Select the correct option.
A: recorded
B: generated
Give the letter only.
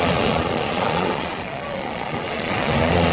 B